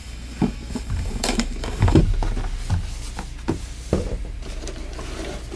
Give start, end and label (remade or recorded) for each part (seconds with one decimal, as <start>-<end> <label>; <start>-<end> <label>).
0.0-2.0 remade; 2.0-5.6 recorded